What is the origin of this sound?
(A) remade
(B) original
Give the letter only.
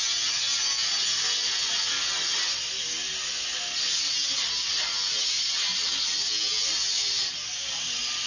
B